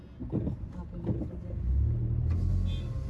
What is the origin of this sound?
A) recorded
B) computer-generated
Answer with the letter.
A